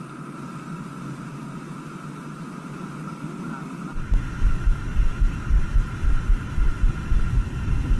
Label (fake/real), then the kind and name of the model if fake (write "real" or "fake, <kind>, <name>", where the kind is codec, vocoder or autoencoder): real